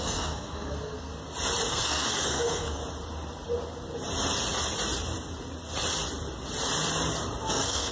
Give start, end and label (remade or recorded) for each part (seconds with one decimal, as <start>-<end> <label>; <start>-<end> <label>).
0.0-1.1 remade; 1.1-1.7 recorded; 1.7-2.8 remade; 2.8-7.5 recorded; 7.5-7.9 remade